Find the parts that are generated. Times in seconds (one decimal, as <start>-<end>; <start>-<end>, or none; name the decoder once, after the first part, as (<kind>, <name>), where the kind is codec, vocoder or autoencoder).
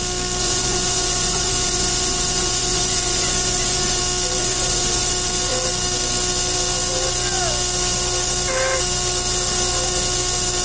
0.4-4.0 (vocoder, Vocos); 4.4-5.1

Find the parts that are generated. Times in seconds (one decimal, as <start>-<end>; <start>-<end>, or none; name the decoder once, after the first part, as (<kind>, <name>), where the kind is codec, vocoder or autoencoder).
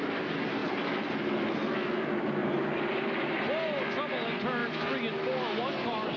2.4-3.4 (vocoder, BigVGAN v2)